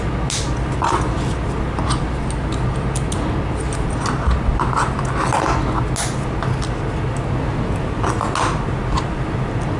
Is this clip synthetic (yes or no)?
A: no